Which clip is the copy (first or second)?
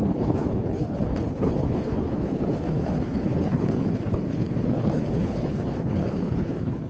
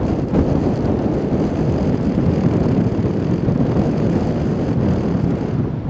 first